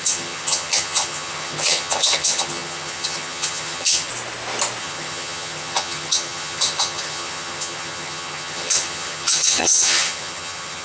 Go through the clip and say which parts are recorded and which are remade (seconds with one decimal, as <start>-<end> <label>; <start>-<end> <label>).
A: 0.0-4.1 remade; 4.1-4.8 recorded; 4.8-10.8 remade